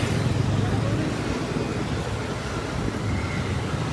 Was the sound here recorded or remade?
recorded